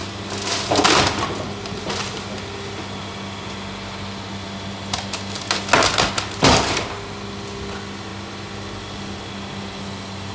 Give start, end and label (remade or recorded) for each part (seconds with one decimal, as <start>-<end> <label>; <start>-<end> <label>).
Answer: 0.0-10.3 recorded